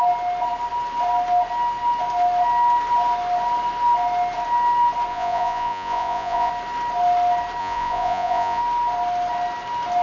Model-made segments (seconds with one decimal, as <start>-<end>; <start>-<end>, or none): 5.1-6.5; 7.6-8.6